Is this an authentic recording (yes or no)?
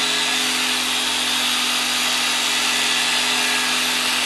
yes